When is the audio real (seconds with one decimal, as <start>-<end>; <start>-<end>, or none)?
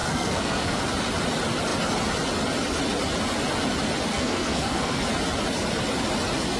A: 0.8-4.1; 5.0-6.6